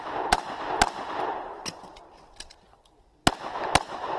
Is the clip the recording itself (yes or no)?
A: yes